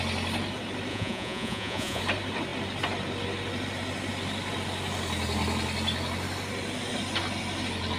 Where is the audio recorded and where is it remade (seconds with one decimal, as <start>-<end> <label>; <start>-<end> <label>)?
0.0-0.9 recorded; 0.9-2.0 remade; 2.0-8.0 recorded